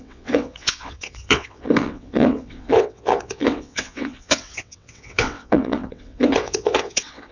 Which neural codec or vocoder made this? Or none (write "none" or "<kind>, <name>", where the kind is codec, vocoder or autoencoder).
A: vocoder, WaveNeXt